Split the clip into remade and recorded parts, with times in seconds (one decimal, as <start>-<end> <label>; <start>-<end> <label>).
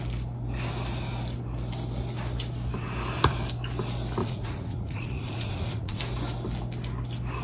0.0-4.2 recorded; 4.2-6.0 remade; 6.0-7.4 recorded